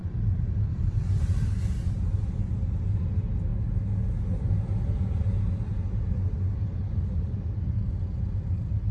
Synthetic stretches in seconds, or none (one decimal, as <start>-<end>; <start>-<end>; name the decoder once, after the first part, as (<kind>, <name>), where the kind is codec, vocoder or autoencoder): 0.0-1.0 (vocoder, BigVGAN v2)